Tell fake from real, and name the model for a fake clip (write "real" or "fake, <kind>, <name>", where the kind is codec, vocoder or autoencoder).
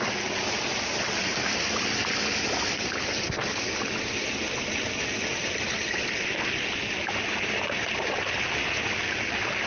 real